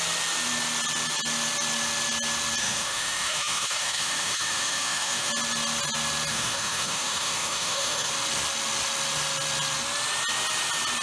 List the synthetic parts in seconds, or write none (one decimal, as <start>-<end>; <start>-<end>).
2.6-5.3; 6.3-8.1